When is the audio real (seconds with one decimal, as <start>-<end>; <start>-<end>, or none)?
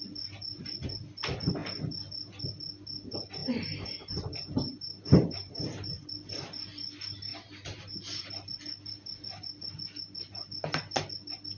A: 0.0-3.4; 6.1-7.3; 8.3-11.6